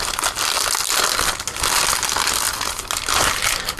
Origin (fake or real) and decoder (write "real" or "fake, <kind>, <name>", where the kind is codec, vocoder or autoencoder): real